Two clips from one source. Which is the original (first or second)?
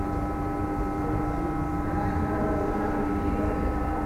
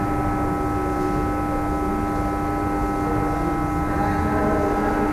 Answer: second